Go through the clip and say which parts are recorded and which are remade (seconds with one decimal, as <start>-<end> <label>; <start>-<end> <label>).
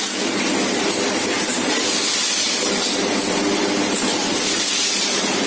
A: 0.0-5.5 recorded